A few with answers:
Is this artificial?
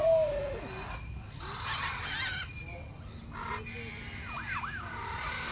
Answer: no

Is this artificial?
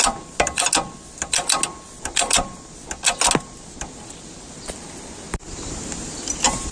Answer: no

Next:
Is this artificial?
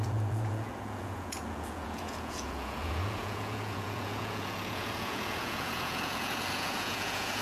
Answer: yes